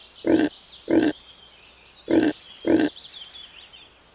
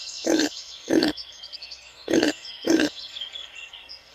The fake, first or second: second